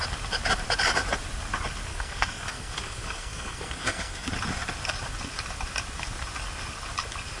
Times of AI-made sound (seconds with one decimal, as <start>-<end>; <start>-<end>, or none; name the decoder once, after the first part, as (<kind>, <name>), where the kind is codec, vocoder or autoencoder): 1.9-4.3 (codec, SNAC)